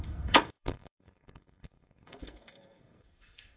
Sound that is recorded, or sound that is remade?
remade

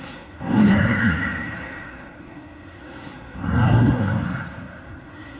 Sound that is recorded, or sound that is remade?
remade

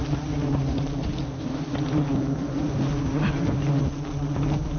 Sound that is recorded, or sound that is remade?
recorded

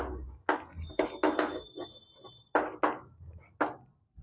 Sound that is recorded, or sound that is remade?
recorded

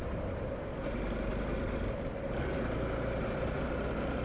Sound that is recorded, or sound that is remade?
recorded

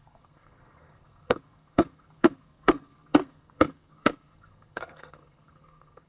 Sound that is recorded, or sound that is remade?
remade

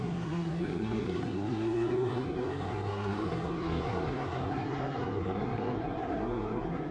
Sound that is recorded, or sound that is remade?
remade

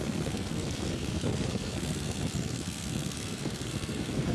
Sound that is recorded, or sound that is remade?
remade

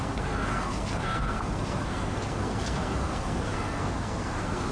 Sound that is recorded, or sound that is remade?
remade